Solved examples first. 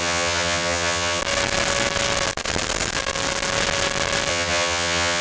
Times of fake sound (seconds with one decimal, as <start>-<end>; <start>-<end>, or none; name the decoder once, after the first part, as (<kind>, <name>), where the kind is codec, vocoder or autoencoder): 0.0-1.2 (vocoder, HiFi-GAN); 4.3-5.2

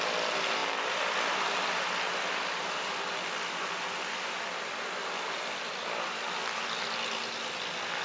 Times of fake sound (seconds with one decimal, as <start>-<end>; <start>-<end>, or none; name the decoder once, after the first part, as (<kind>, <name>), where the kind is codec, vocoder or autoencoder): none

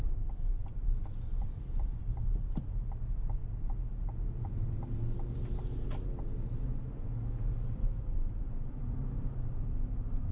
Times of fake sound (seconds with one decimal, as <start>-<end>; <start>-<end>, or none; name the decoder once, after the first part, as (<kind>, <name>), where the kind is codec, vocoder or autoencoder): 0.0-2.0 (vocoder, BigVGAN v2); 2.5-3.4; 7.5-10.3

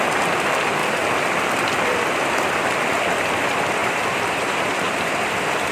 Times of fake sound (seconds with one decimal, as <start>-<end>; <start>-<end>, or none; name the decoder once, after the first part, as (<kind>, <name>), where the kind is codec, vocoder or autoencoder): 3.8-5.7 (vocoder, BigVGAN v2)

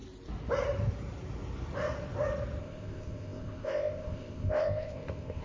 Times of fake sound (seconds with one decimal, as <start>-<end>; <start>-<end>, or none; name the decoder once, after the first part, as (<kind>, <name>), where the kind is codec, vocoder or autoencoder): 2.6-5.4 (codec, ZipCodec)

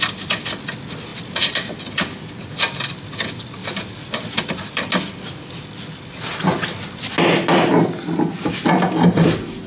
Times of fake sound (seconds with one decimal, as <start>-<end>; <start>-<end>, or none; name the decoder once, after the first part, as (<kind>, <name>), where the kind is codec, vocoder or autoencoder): 1.1-1.8 (vocoder, BigVGAN v2); 3.6-6.1